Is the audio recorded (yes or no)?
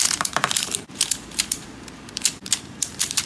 no